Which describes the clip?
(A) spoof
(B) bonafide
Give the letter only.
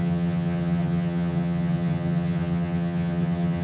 A